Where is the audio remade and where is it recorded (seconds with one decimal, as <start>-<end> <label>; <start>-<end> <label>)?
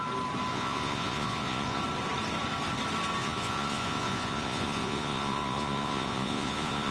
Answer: 0.0-0.5 recorded; 0.5-1.8 remade; 1.8-3.2 recorded; 3.2-6.9 remade